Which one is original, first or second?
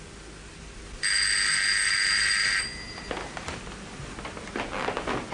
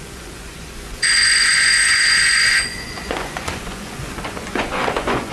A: first